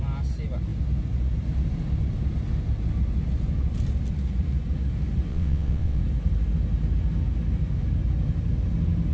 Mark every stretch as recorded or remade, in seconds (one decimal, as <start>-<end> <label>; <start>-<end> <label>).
0.0-5.3 recorded; 5.3-6.0 remade; 6.0-9.1 recorded